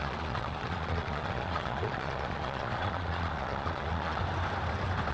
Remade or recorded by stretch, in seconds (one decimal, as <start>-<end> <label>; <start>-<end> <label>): 0.0-4.2 remade; 4.2-5.1 recorded